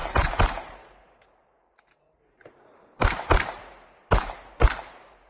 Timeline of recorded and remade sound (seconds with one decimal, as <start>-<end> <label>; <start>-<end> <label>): 0.0-5.3 remade